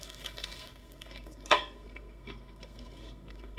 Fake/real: fake